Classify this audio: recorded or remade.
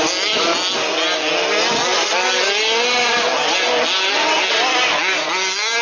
recorded